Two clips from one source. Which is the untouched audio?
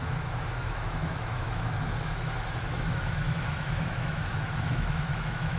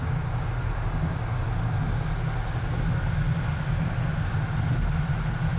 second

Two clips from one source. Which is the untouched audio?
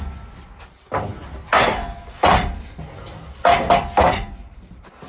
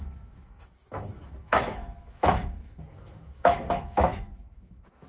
first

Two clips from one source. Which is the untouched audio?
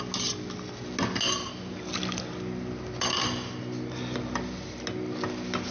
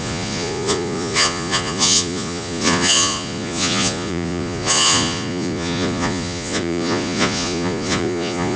first